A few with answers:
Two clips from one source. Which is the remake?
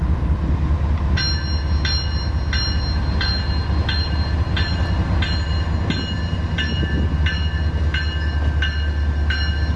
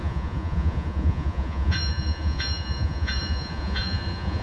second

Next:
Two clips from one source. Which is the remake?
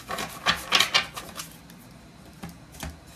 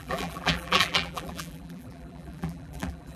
second